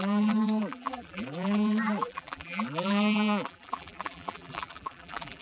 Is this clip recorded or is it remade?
remade